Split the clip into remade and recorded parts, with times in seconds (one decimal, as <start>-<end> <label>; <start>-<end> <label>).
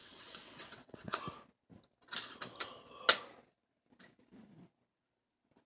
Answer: 0.0-1.2 remade; 1.2-5.7 recorded